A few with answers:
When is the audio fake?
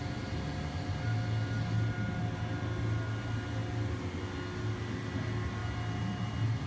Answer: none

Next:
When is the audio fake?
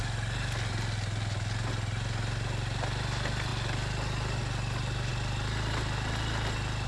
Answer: none